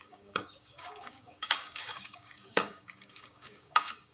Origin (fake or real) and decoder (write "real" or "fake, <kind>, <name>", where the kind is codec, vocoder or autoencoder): fake, codec, DAC